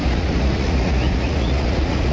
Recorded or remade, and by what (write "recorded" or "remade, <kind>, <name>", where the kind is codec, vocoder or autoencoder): remade, vocoder, Vocos